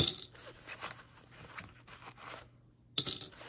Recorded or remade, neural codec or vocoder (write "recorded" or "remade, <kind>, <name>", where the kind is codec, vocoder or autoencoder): recorded